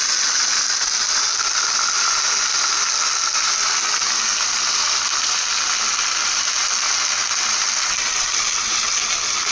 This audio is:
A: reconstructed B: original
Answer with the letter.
B